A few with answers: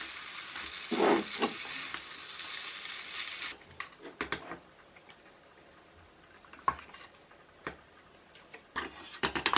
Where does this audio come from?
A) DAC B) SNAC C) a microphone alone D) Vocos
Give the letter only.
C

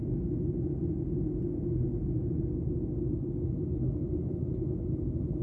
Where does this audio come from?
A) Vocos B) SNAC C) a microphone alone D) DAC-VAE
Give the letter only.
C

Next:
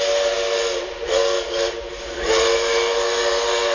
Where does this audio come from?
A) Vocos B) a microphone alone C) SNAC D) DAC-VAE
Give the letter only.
B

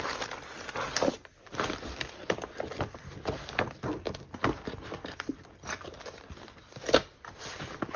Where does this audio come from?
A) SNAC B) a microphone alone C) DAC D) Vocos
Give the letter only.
B